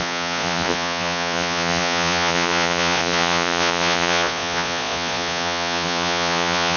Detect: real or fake fake